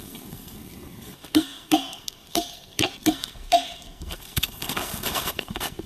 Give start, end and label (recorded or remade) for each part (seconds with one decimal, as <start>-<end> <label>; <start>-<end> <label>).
0.0-5.9 remade